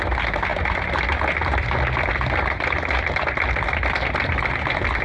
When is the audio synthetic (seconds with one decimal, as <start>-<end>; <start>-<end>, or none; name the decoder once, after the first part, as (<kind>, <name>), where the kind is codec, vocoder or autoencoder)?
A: none